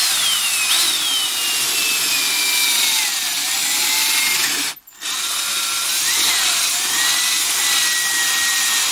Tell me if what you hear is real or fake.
real